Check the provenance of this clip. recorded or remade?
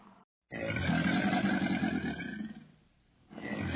recorded